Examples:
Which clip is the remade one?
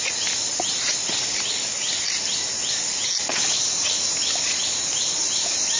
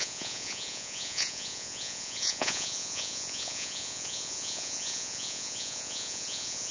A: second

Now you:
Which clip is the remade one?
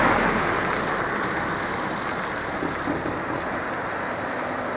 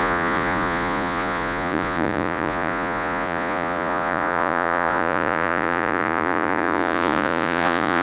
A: second